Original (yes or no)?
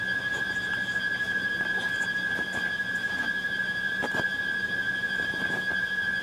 no